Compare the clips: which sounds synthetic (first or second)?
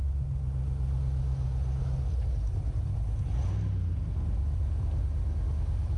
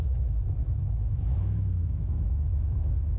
second